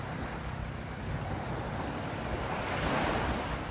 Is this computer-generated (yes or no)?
no